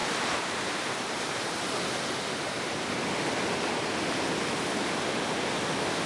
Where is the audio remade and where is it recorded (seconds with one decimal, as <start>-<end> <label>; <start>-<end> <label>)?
0.0-1.4 remade; 1.4-6.1 recorded